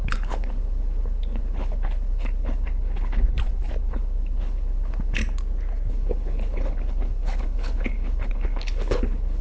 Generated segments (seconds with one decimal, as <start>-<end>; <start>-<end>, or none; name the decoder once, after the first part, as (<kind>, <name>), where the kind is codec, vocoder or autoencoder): 0.0-5.2 (codec, HILCodec); 5.9-9.4